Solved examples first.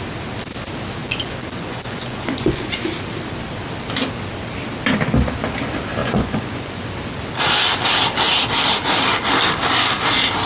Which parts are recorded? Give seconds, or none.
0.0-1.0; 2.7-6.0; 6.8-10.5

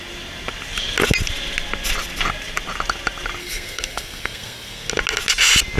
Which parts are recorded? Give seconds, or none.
0.0-3.4; 4.9-5.8

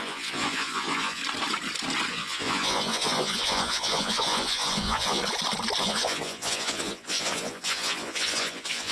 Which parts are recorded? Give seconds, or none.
1.2-2.1; 5.2-5.8

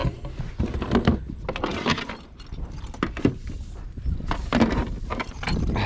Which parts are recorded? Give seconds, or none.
0.0-5.9

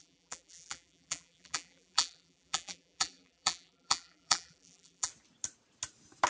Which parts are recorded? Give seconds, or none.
5.1-6.3